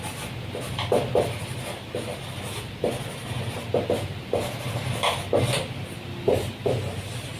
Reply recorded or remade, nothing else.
recorded